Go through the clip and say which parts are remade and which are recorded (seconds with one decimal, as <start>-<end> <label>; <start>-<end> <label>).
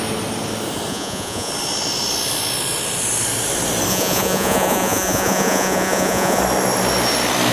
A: 0.0-0.9 recorded; 0.9-1.5 remade; 1.5-3.9 recorded; 3.9-6.4 remade; 6.4-7.5 recorded